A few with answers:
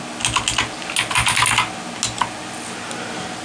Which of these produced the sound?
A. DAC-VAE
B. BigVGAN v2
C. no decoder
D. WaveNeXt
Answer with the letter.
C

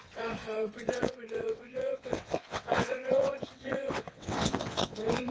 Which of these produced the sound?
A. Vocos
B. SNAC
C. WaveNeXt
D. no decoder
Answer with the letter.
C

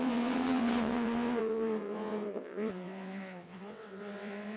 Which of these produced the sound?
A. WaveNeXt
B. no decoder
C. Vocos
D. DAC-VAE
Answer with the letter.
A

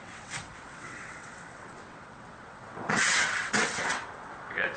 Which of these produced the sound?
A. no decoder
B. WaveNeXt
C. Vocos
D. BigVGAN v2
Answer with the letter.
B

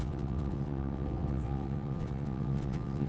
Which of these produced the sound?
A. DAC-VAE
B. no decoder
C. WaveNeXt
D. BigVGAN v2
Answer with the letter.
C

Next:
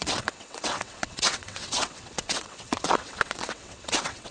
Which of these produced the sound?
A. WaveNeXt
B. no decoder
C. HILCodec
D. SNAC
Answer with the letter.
A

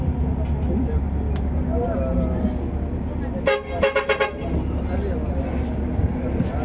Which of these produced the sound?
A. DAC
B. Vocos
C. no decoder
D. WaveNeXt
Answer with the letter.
C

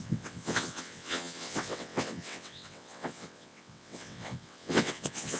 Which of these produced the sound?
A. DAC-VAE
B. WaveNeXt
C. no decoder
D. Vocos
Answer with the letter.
B